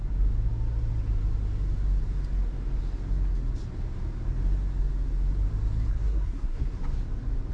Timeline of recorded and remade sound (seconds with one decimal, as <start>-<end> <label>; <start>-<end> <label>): 0.0-5.9 recorded; 5.9-6.8 remade; 6.8-7.5 recorded